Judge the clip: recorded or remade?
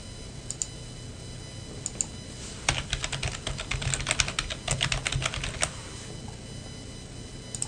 recorded